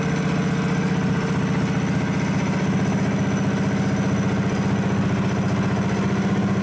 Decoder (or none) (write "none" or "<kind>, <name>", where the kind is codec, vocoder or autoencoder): none